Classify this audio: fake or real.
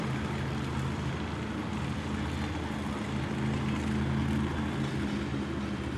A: real